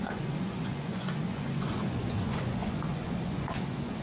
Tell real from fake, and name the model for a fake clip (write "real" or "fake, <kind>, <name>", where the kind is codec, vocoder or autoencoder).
fake, vocoder, Vocos